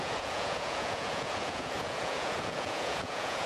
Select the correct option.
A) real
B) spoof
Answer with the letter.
B